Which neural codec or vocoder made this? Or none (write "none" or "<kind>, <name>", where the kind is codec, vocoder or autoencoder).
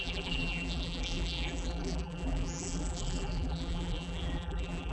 vocoder, BigVGAN v2